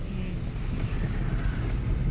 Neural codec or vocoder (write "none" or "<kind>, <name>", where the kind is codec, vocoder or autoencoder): none